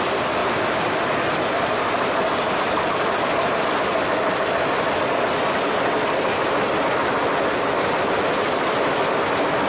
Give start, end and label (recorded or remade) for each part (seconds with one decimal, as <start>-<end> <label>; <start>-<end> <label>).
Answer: 0.0-0.4 recorded; 0.4-3.8 remade; 3.8-9.7 recorded